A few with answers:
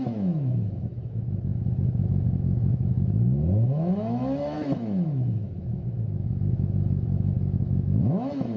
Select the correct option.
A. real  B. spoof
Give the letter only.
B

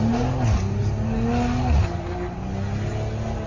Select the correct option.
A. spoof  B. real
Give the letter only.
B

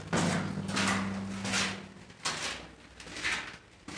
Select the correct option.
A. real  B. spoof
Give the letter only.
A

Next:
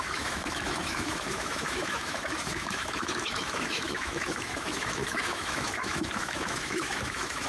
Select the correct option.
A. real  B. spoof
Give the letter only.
B